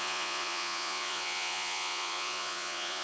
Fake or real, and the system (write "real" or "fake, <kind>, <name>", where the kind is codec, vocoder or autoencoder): fake, vocoder, Vocos